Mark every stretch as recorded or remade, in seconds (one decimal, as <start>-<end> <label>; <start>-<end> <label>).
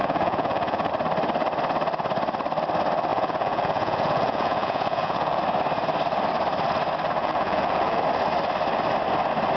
0.0-0.9 remade; 0.9-3.1 recorded; 3.1-5.4 remade; 5.4-7.2 recorded; 7.2-8.0 remade; 8.0-9.6 recorded